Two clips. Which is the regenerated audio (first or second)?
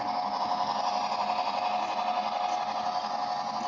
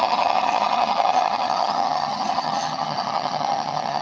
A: second